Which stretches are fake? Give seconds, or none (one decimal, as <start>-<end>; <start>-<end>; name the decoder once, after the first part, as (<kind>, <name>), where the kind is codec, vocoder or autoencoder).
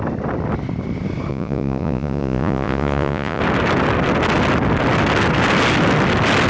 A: 1.3-3.4 (vocoder, Vocos)